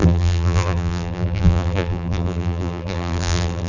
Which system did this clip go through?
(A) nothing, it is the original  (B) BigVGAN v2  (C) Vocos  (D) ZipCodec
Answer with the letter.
B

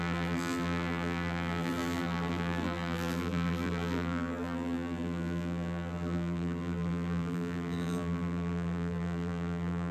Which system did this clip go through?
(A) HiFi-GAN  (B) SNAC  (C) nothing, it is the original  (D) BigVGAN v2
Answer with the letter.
D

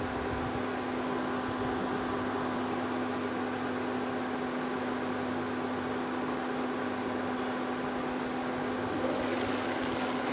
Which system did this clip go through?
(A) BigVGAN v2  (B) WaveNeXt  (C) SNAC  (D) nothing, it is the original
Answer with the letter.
D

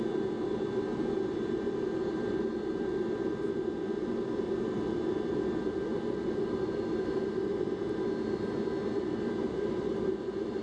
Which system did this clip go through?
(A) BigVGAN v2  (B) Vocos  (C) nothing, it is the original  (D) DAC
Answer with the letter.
C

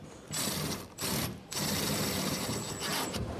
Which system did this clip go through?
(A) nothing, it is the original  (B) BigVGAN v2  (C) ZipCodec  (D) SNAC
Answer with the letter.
B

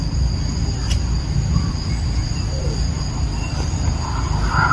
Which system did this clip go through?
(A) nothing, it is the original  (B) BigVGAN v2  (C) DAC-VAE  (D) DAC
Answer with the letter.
A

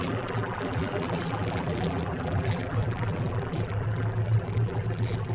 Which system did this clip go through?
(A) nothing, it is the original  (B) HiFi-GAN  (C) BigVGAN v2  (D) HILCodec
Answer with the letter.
C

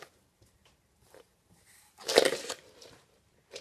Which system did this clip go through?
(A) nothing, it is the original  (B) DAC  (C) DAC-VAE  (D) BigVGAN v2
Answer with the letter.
D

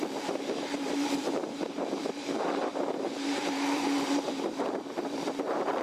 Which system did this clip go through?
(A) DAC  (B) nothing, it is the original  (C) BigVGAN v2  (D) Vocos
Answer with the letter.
C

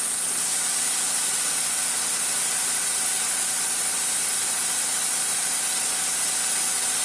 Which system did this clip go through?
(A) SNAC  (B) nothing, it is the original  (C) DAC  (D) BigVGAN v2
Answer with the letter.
B